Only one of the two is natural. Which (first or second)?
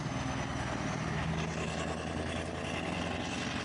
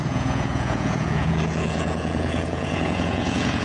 first